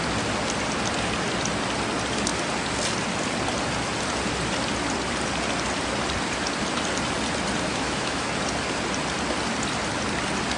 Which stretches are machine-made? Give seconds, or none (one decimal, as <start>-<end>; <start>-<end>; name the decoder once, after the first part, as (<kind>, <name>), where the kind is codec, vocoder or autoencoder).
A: 7.7-8.3 (autoencoder, DAC-VAE)